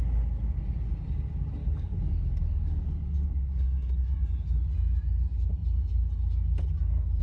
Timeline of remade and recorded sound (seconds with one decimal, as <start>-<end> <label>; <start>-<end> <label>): 0.0-1.6 recorded; 1.6-4.2 remade; 4.2-7.2 recorded